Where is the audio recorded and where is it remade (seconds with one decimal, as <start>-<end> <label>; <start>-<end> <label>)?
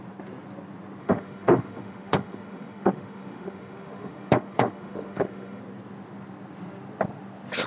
0.0-1.0 recorded; 1.0-5.6 remade; 5.6-7.7 recorded